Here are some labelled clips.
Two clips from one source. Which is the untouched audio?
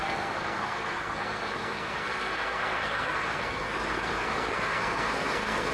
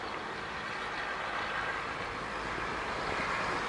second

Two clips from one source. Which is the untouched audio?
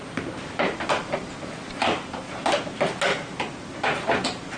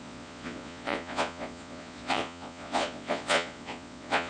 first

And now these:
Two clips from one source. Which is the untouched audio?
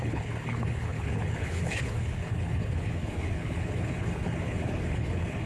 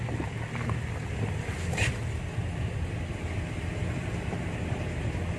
second